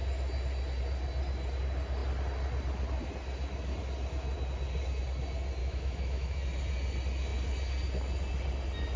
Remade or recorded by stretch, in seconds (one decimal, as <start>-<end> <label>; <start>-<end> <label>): 0.0-5.6 recorded; 5.6-6.4 remade; 6.4-9.0 recorded